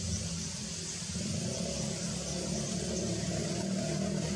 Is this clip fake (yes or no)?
no